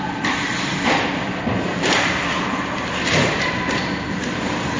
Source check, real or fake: fake